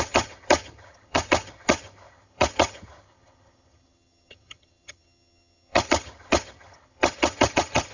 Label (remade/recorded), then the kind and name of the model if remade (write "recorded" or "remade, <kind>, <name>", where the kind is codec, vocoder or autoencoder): remade, vocoder, HiFi-GAN